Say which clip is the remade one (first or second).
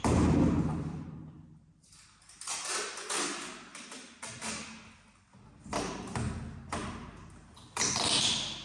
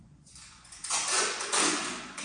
second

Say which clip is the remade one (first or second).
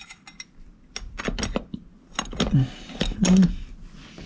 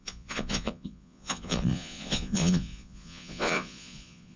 second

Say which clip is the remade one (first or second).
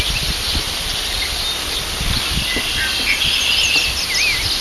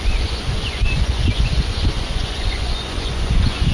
second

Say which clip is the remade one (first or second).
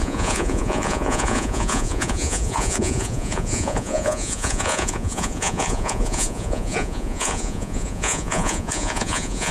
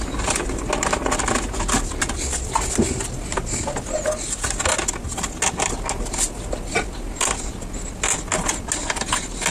first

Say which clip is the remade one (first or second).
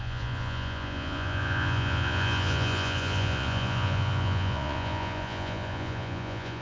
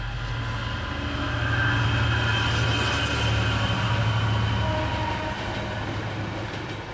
first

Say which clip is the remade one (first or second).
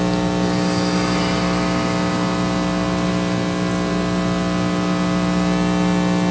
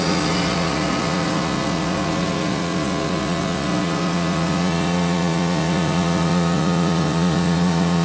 second